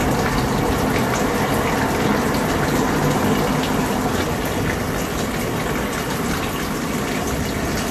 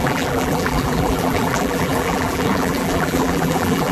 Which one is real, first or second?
first